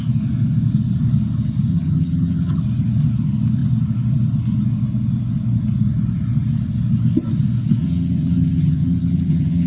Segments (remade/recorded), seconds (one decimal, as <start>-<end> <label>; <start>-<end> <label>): 0.0-1.7 recorded; 1.7-2.6 remade; 2.6-7.8 recorded; 7.8-9.7 remade